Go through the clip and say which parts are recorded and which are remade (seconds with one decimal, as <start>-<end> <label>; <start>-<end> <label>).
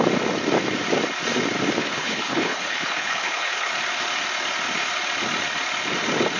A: 0.0-1.8 recorded; 1.8-3.7 remade; 3.7-6.4 recorded